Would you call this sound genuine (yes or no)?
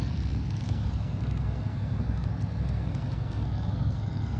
no